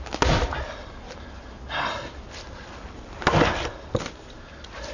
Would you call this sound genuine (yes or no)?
yes